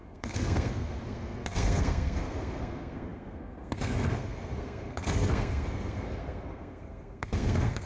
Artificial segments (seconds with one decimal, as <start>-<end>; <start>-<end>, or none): 0.0-7.9